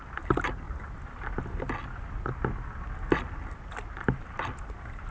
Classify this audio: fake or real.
real